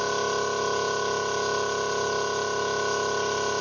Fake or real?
real